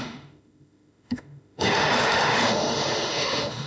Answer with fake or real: fake